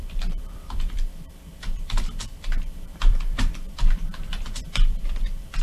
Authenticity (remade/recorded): remade